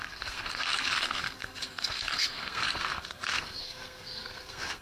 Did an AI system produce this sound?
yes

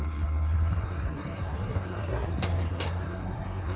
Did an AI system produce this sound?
yes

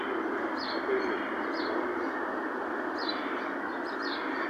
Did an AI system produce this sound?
no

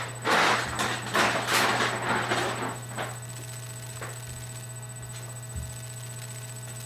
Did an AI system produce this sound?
no